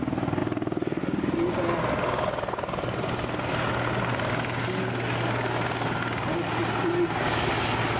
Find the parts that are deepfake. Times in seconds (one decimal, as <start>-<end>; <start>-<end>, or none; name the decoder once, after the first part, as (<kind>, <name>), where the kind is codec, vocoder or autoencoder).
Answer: none